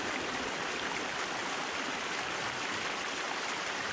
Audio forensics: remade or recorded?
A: recorded